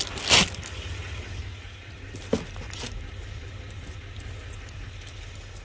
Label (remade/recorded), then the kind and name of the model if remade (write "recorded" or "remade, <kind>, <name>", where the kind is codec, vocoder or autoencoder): recorded